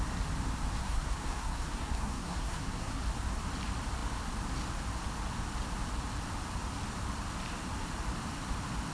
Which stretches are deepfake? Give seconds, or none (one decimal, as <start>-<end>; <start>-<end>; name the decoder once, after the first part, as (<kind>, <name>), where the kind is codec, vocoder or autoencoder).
0.8-3.0 (codec, SNAC)